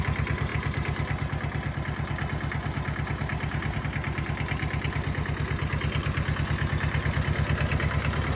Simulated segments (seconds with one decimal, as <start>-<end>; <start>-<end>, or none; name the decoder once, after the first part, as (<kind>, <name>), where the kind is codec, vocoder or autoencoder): none